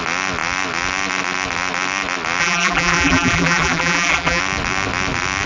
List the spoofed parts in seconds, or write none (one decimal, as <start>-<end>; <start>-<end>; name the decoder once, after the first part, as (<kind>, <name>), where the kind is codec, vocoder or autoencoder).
2.4-4.4 (vocoder, BigVGAN v2)